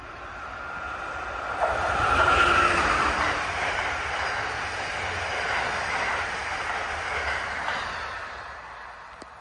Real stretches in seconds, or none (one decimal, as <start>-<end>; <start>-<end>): 0.0-9.4